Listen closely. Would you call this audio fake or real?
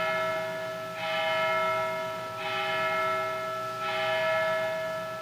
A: real